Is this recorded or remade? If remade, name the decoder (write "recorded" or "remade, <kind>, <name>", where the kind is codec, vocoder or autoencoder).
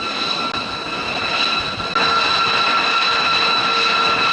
recorded